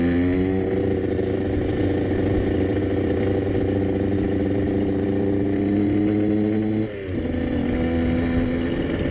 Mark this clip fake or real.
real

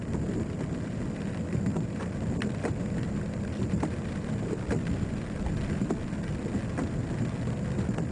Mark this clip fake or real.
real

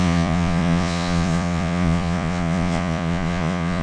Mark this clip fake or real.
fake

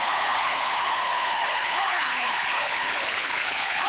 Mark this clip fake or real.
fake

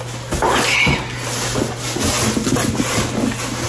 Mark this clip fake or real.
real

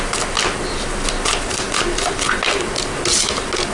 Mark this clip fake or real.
real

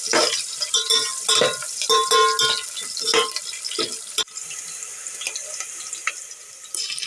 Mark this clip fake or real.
real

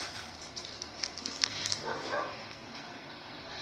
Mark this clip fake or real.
fake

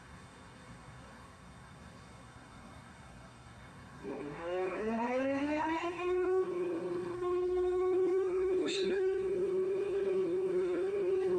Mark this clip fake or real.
fake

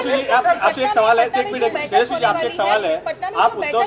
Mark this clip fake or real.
real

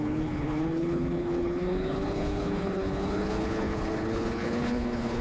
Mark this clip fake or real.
fake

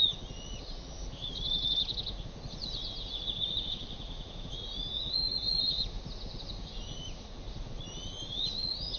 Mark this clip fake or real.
fake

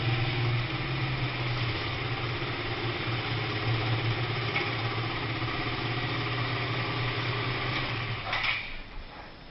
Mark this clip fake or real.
real